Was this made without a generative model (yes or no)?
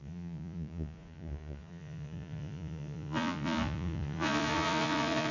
no